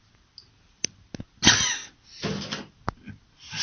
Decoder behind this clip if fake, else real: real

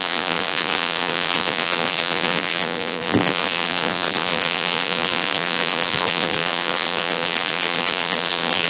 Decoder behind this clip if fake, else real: fake, vocoder, BigVGAN v2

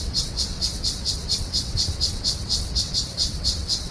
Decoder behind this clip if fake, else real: fake, vocoder, WaveNeXt